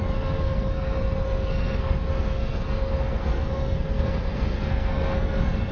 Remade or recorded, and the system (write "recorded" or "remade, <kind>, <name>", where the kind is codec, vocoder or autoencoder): remade, codec, SNAC